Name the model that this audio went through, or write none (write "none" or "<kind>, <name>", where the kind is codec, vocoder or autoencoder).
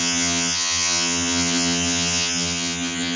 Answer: vocoder, HiFi-GAN